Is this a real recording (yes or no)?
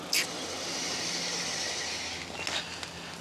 yes